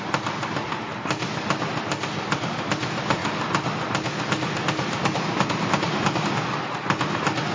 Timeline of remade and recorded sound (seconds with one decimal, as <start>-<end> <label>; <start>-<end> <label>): 0.0-7.5 recorded